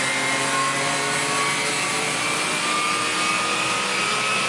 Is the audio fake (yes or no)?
no